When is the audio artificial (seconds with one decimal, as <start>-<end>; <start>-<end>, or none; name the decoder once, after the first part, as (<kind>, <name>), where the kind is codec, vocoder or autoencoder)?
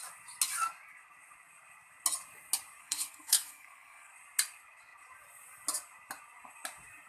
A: 2.8-4.1 (codec, SNAC)